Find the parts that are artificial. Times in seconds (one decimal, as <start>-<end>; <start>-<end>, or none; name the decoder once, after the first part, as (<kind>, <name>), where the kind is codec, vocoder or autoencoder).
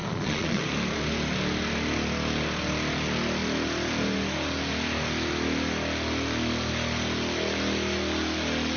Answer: 0.0-0.6 (vocoder, Vocos)